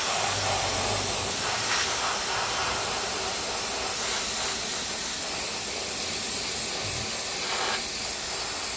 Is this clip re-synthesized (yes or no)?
no